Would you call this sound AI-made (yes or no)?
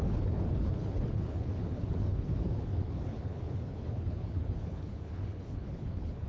yes